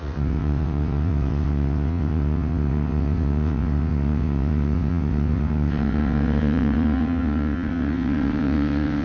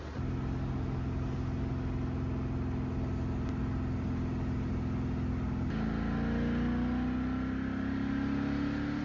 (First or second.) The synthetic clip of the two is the first